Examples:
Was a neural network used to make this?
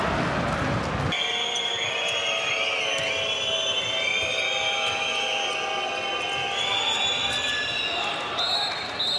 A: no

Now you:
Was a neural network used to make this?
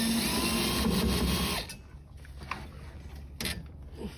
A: no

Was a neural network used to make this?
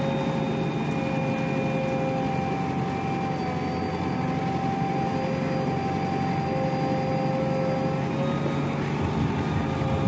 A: no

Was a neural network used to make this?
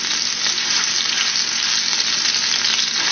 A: no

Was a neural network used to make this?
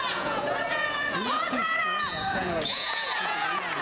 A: yes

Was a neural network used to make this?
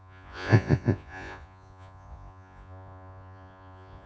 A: yes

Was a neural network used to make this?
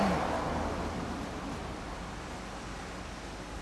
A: no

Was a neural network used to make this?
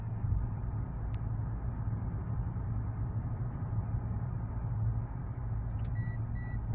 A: no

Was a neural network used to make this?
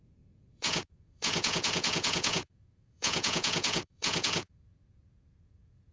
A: yes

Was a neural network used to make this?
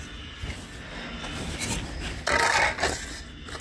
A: no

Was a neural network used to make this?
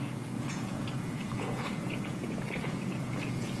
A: yes